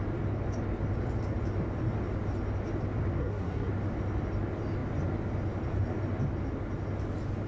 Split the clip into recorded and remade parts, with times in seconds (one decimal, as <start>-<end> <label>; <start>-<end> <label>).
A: 0.0-3.2 recorded; 3.2-3.7 remade; 3.7-7.5 recorded